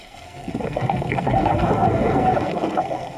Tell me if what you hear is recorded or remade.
remade